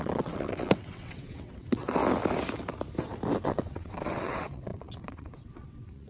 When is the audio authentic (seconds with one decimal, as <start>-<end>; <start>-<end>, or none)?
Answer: 2.0-3.4